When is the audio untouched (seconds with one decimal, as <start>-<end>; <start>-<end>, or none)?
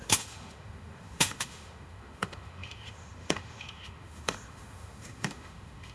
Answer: none